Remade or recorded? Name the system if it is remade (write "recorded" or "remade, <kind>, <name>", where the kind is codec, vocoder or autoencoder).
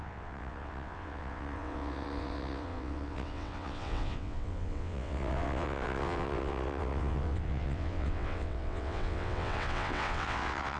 remade, vocoder, WaveNeXt